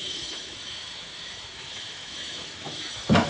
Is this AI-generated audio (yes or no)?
yes